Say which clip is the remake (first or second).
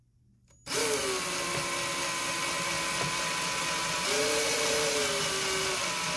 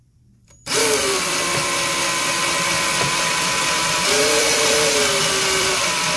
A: second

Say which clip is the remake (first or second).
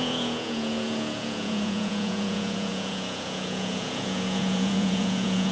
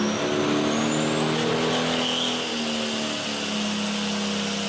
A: first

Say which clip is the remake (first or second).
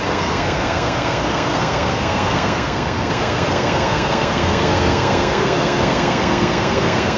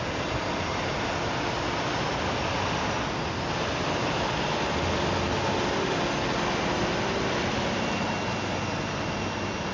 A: first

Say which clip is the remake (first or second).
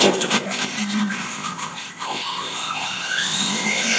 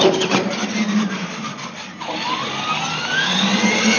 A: first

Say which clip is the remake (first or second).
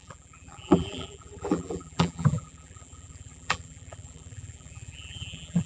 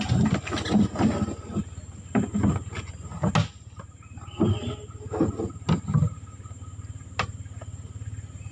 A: first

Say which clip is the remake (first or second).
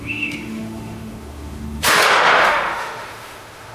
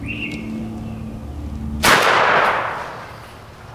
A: first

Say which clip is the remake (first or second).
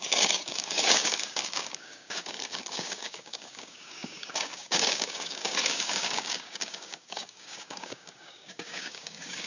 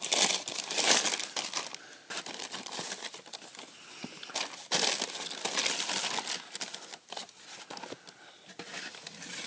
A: first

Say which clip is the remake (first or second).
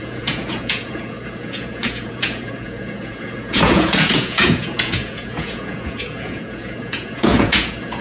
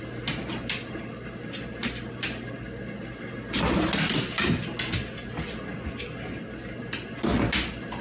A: first